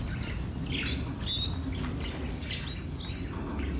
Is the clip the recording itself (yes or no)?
yes